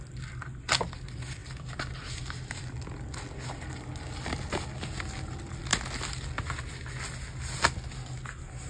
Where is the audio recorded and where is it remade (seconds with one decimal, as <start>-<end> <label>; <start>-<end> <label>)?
0.0-8.7 recorded